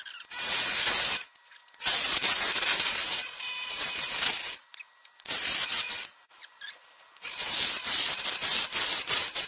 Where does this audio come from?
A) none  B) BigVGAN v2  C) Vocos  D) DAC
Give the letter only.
A